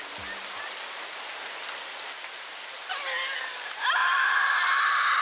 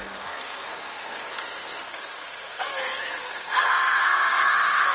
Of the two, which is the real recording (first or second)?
first